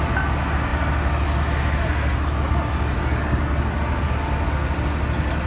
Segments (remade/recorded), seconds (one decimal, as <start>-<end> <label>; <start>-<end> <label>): 0.0-5.5 recorded

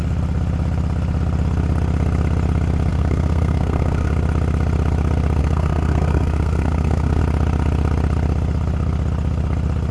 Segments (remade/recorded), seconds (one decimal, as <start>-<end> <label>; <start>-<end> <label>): 0.0-2.9 recorded; 2.9-4.1 remade; 4.1-5.4 recorded; 5.4-7.2 remade; 7.2-9.9 recorded

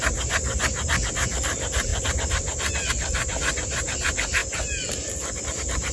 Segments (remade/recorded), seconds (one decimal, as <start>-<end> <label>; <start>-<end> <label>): 0.0-5.9 recorded

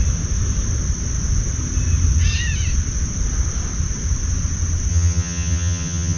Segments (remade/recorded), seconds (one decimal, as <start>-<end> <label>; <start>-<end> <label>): 0.0-4.9 recorded; 4.9-6.2 remade

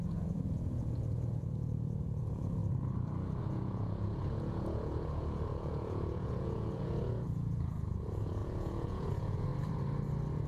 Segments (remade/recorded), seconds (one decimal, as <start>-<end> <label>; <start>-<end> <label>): 0.0-2.6 remade; 2.6-3.4 recorded; 3.4-9.5 remade; 9.5-10.5 recorded

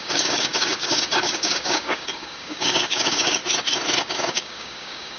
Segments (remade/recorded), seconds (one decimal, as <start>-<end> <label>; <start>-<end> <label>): 0.0-3.4 remade; 3.4-4.0 recorded; 4.0-5.2 remade